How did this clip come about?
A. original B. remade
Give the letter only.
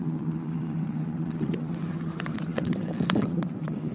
B